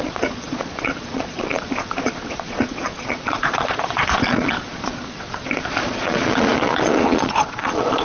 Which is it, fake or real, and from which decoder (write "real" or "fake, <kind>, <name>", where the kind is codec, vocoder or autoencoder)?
fake, vocoder, Vocos